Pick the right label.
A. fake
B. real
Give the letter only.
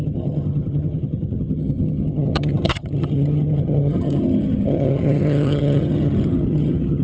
A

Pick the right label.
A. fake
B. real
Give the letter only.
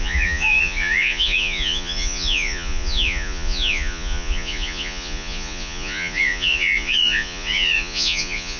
A